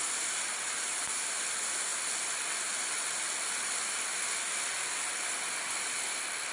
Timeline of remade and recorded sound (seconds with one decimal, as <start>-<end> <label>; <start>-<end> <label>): 0.0-6.5 recorded